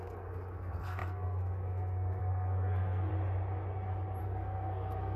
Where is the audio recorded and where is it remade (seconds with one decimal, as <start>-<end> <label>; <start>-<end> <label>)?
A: 0.0-3.1 remade; 3.1-4.2 recorded; 4.2-5.2 remade